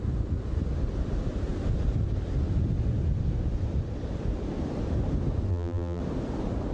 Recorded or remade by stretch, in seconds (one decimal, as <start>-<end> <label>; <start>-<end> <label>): 0.0-5.5 recorded; 5.5-6.0 remade; 6.0-6.7 recorded